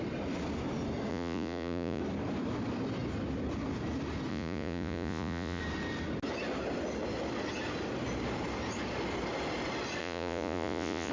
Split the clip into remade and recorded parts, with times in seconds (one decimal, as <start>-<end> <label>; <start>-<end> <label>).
0.0-1.1 recorded; 1.1-2.0 remade; 2.0-4.3 recorded; 4.3-5.6 remade; 5.6-10.0 recorded; 10.0-11.1 remade